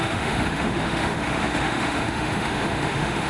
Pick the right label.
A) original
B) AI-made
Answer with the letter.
B